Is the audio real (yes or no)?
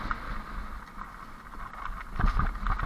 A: yes